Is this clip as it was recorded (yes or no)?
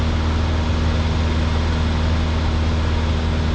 yes